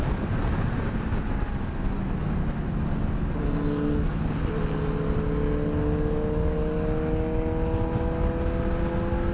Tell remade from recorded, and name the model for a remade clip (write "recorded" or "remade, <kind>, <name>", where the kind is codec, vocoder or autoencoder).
recorded